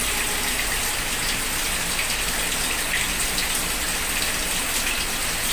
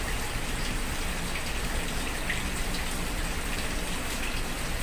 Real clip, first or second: first